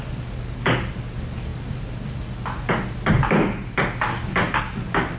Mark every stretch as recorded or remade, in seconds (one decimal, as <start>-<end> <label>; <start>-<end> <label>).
0.0-5.2 recorded

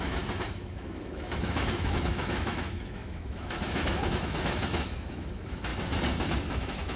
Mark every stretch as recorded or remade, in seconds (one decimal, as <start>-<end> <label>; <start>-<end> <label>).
0.0-5.7 remade; 5.7-6.5 recorded; 6.5-7.0 remade

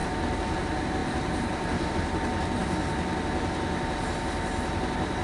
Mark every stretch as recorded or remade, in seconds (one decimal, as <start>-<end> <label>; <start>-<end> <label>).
0.0-0.5 remade; 0.5-1.0 recorded; 1.0-1.9 remade; 1.9-5.2 recorded

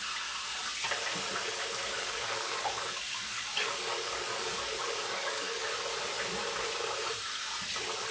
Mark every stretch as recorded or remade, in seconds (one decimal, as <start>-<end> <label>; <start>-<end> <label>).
0.0-1.9 recorded; 1.9-5.7 remade; 5.7-8.1 recorded

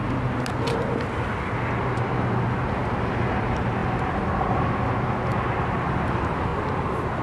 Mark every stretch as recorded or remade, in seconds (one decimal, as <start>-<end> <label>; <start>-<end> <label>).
0.0-7.2 recorded